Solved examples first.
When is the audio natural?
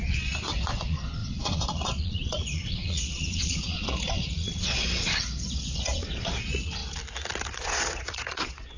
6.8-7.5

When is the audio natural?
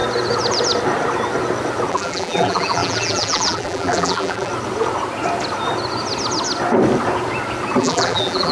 0.0-1.9; 4.5-7.8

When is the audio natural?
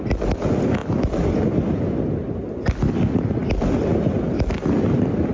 0.0-5.3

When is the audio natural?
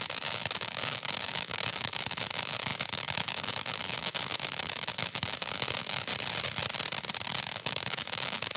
6.1-7.4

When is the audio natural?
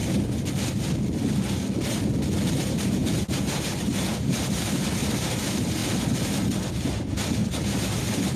0.0-2.5; 5.8-6.7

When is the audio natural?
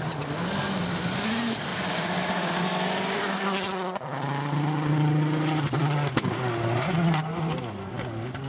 0.0-8.5